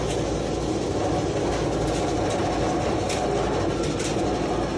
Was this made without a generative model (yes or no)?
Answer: yes